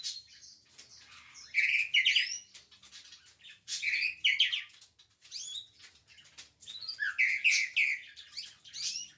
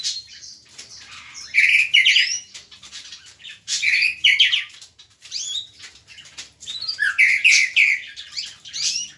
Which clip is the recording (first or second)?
first